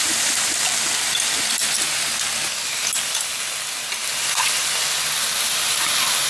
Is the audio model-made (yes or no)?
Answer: no